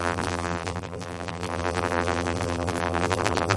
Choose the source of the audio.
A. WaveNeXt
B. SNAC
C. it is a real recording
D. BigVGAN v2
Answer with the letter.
D